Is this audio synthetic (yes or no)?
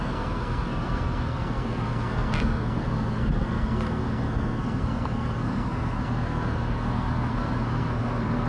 yes